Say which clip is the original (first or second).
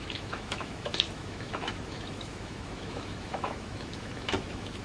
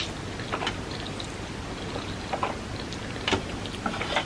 second